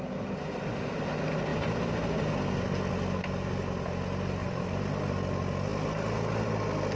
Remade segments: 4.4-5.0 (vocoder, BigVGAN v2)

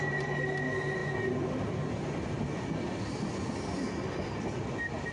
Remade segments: none

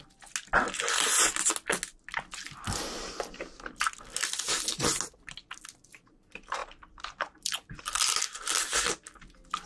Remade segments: 6.6-7.8 (vocoder, BigVGAN v2)